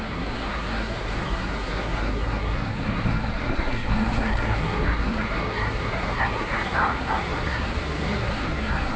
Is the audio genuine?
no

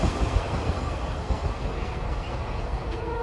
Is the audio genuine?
no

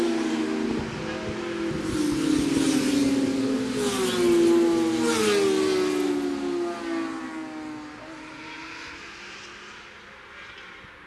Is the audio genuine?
yes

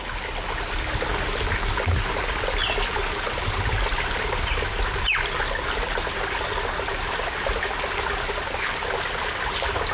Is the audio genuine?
yes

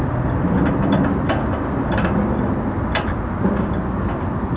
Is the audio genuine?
yes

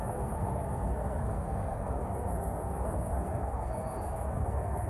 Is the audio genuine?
no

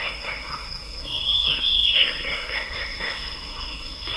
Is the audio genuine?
no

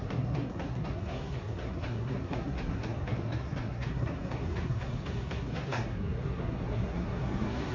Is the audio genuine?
no